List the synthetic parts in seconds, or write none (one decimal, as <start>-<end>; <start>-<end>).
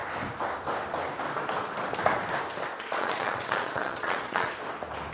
2.7-4.5